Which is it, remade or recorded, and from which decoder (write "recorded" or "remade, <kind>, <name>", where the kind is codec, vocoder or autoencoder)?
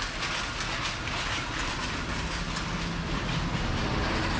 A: recorded